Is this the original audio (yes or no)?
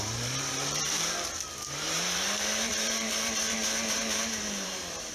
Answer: no